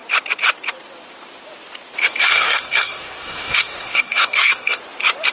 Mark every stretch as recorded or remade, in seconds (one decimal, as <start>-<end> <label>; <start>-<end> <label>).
0.0-2.2 recorded; 2.2-4.8 remade; 4.8-5.3 recorded